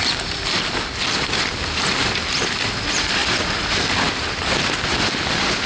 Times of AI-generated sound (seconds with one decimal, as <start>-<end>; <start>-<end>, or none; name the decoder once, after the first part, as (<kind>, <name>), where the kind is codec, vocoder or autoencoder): none